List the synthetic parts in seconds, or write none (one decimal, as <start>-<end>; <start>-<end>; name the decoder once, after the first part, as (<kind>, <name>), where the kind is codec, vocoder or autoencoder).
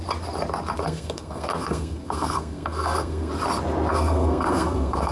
0.8-3.3 (codec, SNAC); 3.9-5.1